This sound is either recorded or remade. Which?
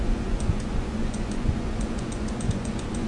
remade